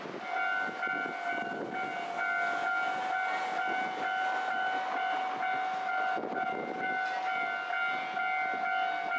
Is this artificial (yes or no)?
no